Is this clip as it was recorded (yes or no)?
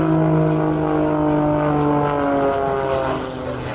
yes